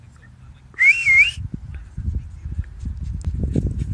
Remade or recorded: recorded